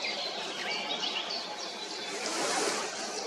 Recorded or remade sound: remade